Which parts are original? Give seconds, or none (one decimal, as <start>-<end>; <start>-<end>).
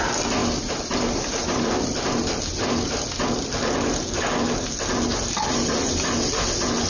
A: 0.0-0.4; 3.3-6.9